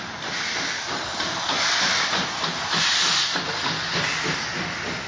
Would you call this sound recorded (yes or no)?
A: yes